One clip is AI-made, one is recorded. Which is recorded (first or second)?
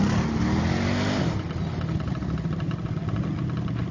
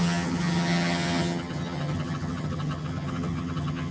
first